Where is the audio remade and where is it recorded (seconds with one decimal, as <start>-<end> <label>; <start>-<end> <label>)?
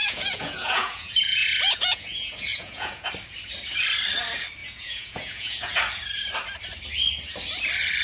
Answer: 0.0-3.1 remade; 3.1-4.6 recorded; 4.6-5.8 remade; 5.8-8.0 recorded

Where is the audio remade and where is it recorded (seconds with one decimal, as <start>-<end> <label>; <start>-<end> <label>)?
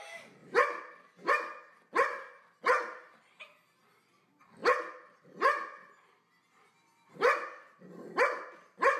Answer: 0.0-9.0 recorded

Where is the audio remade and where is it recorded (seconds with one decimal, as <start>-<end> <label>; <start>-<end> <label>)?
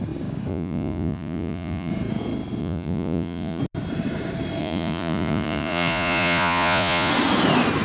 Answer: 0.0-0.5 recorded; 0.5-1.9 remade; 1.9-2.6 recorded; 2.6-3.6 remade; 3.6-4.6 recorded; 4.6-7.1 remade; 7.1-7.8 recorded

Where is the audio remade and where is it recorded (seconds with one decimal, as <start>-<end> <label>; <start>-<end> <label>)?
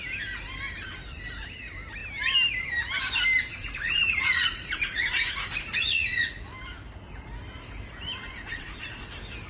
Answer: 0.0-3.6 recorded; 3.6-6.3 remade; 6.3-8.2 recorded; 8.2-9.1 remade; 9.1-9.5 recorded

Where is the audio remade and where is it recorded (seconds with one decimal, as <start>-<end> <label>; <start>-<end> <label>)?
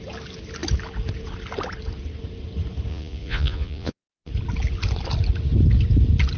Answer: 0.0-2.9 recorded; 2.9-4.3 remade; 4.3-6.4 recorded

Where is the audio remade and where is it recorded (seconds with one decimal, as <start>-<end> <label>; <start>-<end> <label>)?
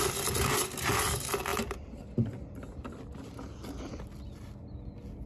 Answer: 0.0-5.3 recorded